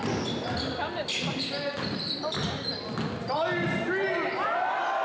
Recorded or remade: recorded